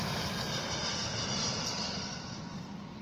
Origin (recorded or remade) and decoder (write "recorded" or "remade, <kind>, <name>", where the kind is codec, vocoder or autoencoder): recorded